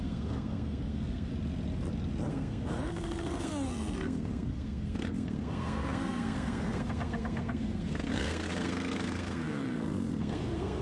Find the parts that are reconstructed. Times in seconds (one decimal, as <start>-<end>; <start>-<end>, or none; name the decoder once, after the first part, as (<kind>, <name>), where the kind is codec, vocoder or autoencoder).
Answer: 0.0-1.3 (codec, SNAC); 2.3-10.8

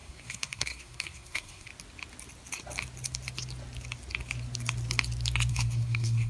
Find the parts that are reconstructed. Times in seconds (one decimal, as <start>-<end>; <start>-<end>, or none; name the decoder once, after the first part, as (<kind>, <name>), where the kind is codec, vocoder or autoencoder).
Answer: 0.0-1.7 (codec, SNAC); 5.5-6.3

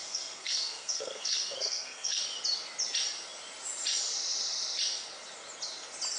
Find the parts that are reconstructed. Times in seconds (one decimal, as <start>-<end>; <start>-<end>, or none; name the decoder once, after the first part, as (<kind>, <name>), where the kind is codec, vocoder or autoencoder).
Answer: 0.0-2.2 (codec, SNAC)

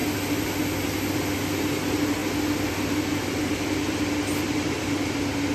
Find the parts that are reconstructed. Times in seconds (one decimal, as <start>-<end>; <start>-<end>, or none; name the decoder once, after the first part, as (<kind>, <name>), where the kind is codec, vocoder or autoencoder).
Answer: none